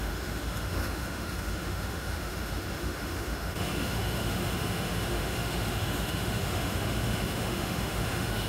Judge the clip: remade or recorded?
remade